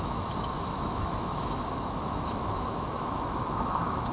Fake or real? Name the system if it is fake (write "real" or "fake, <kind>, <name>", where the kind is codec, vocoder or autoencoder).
fake, autoencoder, DAC-VAE